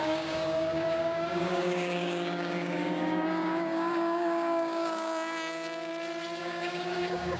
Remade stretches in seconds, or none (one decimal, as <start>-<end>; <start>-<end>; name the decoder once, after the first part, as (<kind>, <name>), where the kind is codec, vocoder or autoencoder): 0.0-5.9 (codec, DAC); 6.4-7.4